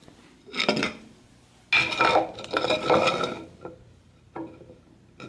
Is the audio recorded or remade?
recorded